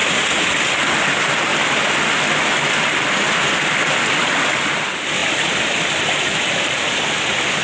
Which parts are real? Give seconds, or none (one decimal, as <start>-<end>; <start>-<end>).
none